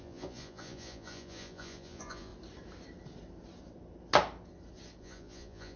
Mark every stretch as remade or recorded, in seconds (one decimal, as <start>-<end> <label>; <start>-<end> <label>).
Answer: 0.0-2.3 remade; 2.3-5.0 recorded; 5.0-5.8 remade